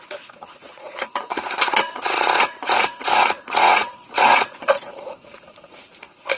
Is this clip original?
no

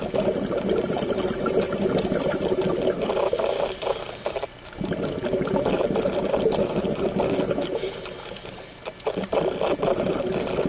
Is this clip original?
yes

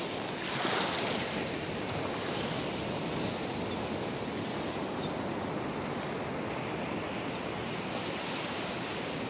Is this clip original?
yes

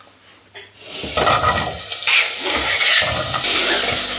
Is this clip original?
yes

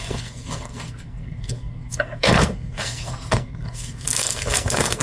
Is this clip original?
no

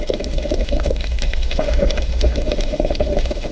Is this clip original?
no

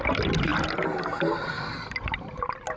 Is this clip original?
yes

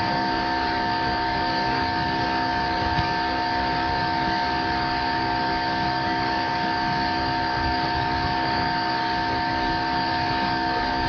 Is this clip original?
no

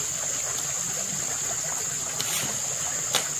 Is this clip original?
yes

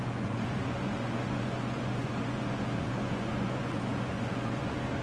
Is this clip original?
no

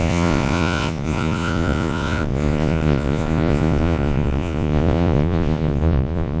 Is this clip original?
no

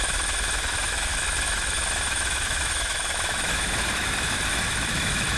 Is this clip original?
no